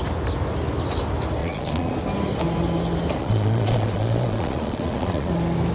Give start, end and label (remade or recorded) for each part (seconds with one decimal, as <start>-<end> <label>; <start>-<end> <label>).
0.0-1.4 recorded; 1.4-1.9 remade; 1.9-3.2 recorded; 3.2-5.3 remade; 5.3-5.7 recorded